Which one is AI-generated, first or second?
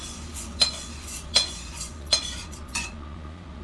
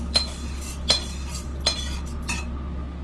first